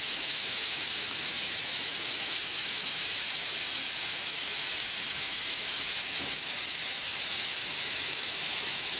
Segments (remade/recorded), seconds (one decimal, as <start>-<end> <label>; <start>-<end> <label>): 0.0-9.0 remade